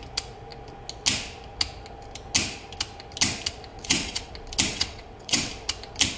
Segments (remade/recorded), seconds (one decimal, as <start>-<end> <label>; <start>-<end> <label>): 0.0-3.7 recorded; 3.7-4.3 remade; 4.3-4.7 recorded; 4.7-5.5 remade; 5.5-6.2 recorded